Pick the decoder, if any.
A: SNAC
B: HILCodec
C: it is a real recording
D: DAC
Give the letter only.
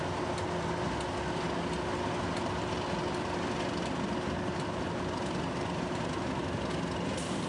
C